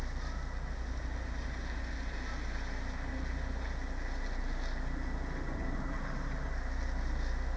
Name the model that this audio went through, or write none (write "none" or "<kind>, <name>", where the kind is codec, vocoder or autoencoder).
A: none